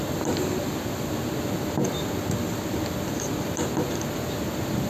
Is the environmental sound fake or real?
real